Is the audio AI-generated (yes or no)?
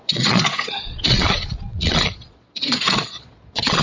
yes